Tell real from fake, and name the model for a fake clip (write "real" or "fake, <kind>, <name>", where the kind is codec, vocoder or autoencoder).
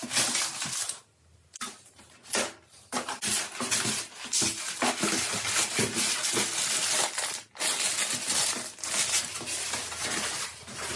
real